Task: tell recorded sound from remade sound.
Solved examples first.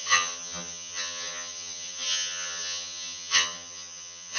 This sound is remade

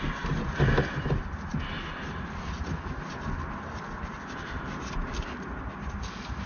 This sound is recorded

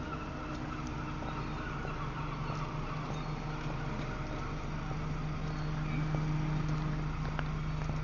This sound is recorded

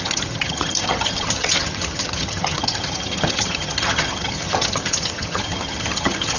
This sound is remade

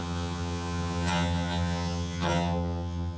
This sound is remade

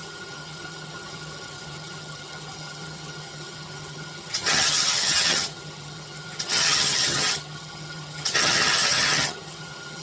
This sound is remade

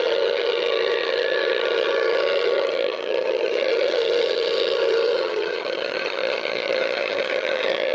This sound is remade